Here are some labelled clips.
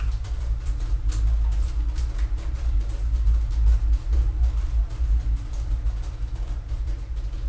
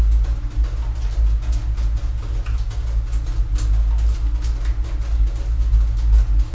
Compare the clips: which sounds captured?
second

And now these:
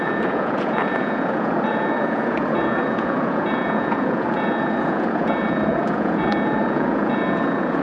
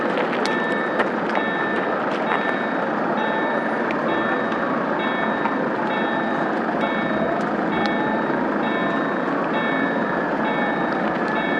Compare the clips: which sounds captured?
second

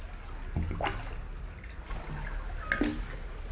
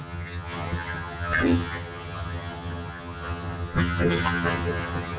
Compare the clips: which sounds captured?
first